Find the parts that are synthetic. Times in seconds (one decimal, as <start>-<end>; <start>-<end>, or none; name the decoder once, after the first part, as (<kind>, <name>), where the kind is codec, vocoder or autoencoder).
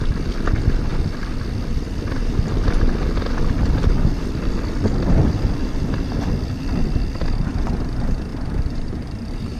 8.3-9.6 (vocoder, BigVGAN v2)